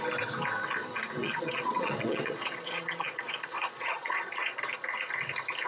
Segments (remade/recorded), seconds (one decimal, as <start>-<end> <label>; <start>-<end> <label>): 0.0-1.2 recorded; 1.2-4.6 remade; 4.6-5.7 recorded